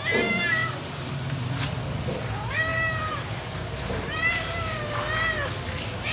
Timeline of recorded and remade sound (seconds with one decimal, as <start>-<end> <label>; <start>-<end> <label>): 0.0-0.6 recorded; 0.6-1.8 remade; 1.8-2.7 recorded; 2.7-4.8 remade; 4.8-6.1 recorded